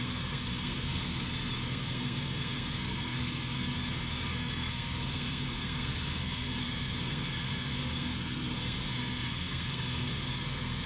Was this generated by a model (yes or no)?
yes